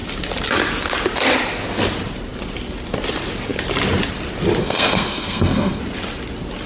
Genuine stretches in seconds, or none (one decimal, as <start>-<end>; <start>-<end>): 0.0-4.6; 5.8-6.7